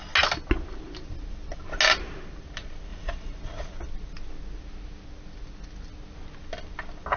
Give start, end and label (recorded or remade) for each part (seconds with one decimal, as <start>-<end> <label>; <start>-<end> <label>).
0.0-2.9 recorded; 2.9-3.7 remade; 3.7-7.2 recorded